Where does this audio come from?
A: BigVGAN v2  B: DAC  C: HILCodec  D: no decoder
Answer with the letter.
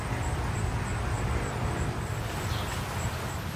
D